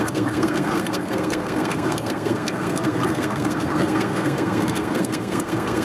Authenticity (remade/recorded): remade